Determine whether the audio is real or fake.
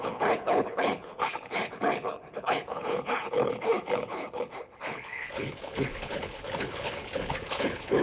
fake